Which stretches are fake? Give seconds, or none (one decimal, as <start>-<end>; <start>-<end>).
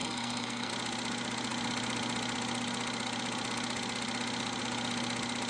0.0-0.7